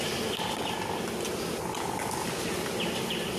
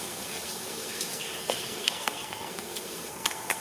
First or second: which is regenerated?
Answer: second